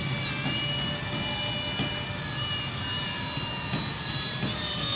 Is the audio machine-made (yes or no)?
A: no